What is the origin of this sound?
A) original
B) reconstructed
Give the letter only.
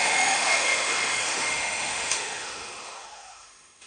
B